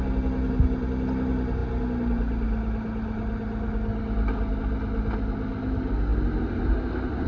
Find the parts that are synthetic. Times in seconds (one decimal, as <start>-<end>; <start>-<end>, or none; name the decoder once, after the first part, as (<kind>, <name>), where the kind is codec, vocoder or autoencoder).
none